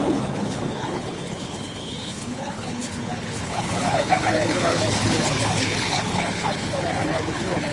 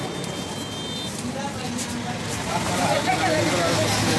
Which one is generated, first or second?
first